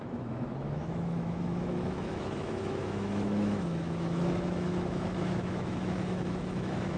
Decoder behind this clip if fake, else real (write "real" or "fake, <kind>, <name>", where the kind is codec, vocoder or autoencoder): fake, autoencoder, DAC-VAE